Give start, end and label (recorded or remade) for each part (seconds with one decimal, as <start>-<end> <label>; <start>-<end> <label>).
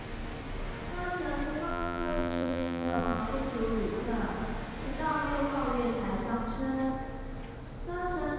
0.0-1.7 recorded; 1.7-3.2 remade; 3.2-8.4 recorded